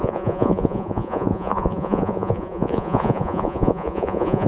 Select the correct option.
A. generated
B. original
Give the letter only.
A